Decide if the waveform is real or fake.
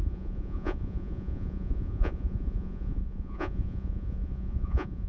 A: fake